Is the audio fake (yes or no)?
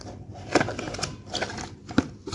no